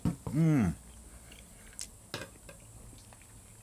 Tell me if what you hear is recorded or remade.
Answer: recorded